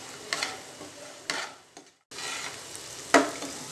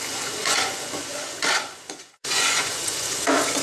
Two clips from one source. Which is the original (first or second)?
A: first